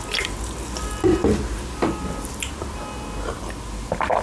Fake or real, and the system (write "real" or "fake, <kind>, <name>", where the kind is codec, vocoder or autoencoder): real